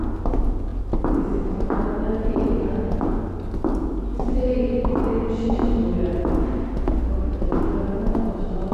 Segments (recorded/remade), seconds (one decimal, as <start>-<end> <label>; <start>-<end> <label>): 0.0-8.7 recorded